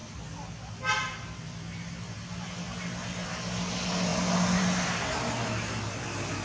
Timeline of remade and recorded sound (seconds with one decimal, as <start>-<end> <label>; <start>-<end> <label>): 0.0-6.4 recorded